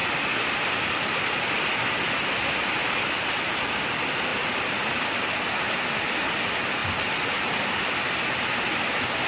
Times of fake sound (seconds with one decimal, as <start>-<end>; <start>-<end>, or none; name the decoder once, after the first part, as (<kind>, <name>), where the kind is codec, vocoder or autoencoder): none